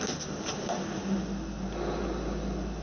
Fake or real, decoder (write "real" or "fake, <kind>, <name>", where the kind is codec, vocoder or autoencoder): real